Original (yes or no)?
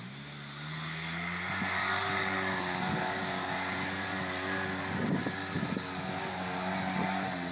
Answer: yes